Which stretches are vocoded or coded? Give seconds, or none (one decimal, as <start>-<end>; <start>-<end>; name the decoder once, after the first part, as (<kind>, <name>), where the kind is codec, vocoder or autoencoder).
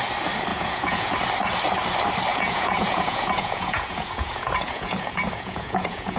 0.5-1.1 (vocoder, Vocos); 2.3-6.2